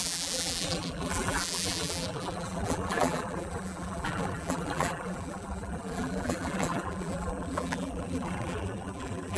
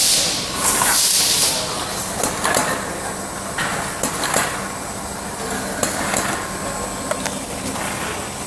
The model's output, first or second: first